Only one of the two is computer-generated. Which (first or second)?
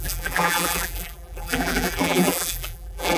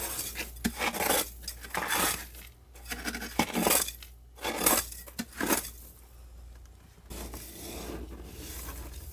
first